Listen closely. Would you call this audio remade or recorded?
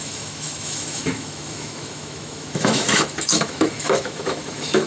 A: remade